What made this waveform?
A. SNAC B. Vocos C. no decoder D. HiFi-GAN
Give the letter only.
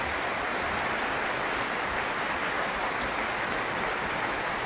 C